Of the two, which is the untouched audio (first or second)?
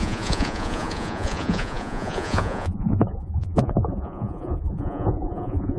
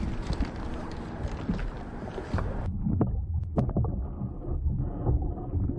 second